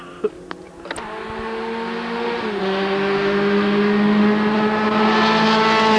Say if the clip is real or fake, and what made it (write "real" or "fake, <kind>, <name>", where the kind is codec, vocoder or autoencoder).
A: real